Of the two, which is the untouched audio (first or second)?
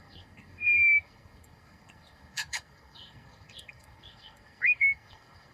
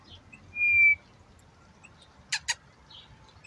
second